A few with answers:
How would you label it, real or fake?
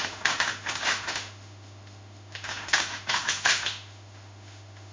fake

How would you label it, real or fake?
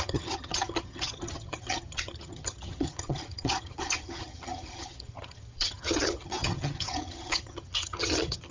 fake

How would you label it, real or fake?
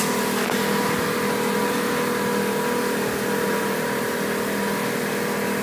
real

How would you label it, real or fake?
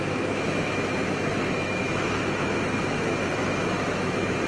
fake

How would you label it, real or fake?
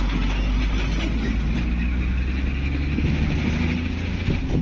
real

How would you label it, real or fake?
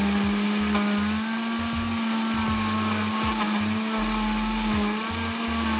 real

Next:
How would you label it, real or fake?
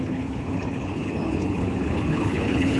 fake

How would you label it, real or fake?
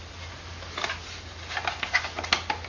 real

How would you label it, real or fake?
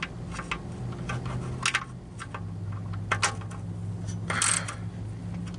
real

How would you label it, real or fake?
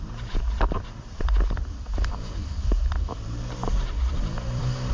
fake